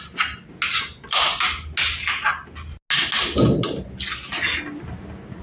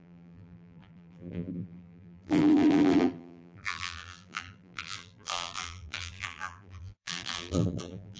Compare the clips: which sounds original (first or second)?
first